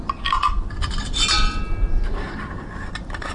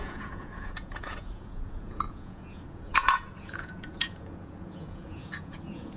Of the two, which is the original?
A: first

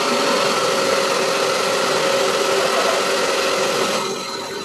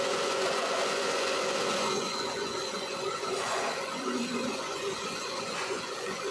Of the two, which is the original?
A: first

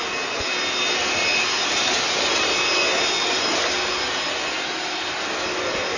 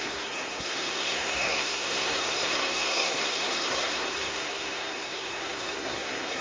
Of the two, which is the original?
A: first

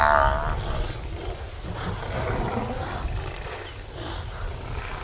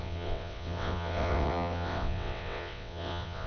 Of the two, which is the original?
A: first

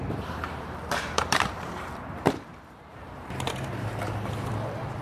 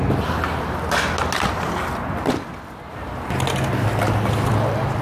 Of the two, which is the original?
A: second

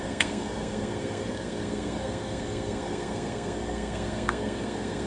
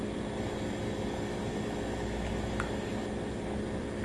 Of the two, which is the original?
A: second